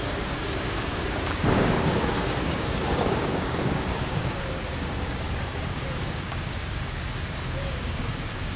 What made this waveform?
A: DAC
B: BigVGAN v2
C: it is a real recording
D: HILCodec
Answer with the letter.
A